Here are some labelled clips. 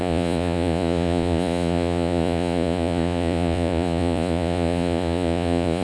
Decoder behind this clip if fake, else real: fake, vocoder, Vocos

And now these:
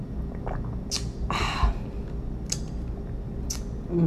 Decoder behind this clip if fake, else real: real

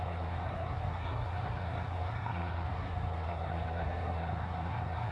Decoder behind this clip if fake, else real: fake, codec, SNAC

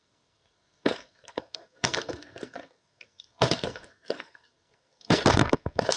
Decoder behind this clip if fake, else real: fake, codec, SNAC